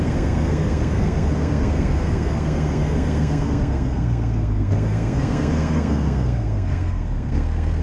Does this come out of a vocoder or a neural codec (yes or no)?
yes